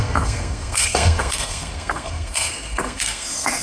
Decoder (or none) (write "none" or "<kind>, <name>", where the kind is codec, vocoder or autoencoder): codec, SNAC